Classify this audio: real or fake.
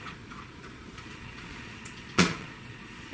fake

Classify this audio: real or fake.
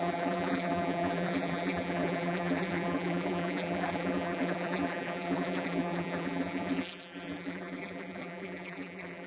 fake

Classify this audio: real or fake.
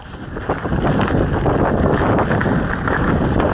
real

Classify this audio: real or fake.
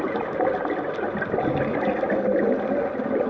real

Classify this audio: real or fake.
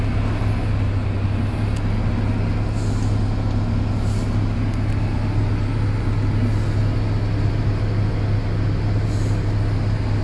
real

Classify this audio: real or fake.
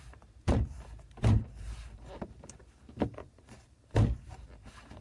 fake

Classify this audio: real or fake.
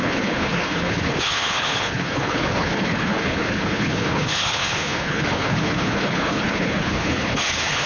fake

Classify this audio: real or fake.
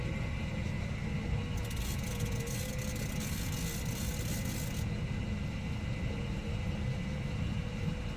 real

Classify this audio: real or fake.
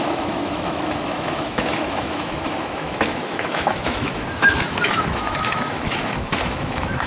fake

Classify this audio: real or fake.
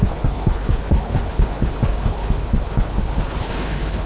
fake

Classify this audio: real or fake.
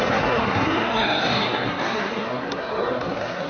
fake